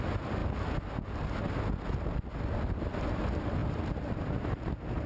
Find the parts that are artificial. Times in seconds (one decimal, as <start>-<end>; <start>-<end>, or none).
none